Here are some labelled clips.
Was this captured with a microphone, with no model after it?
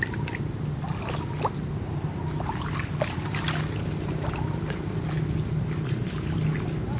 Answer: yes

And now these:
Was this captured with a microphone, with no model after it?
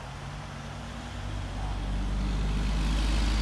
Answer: yes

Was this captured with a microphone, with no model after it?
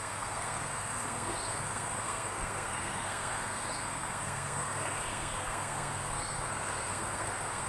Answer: no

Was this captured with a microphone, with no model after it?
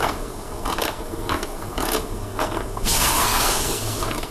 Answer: no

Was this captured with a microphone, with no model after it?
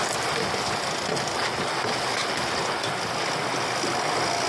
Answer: yes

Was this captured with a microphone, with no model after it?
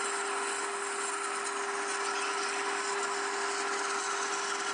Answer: yes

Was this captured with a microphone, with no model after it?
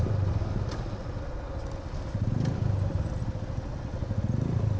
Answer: yes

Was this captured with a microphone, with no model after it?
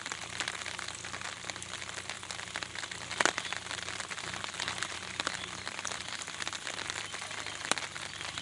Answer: yes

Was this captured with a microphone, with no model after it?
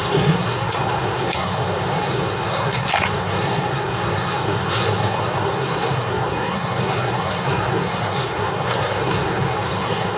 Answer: no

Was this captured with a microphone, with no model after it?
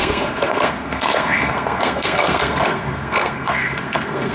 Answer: no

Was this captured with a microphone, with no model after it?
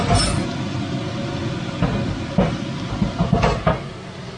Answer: yes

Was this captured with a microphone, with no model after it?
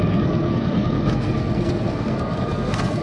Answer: no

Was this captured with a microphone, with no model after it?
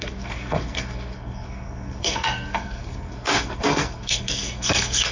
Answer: no